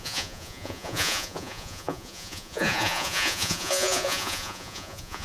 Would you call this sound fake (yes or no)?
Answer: yes